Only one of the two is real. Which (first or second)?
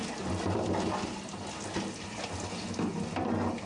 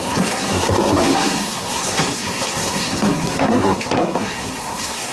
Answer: first